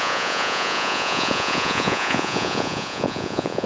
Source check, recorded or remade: remade